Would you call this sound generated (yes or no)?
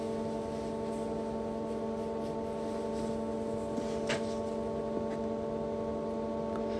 no